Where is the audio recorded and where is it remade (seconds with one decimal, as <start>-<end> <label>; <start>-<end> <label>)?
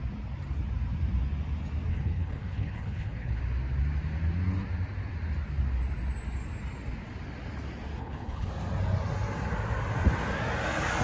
0.0-1.9 recorded; 1.9-3.4 remade; 3.4-8.0 recorded; 8.0-8.5 remade; 8.5-11.0 recorded